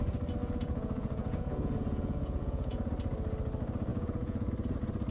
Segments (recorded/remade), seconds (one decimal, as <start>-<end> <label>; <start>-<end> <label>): 0.0-0.4 recorded; 0.4-2.9 remade; 2.9-3.9 recorded; 3.9-4.5 remade; 4.5-5.1 recorded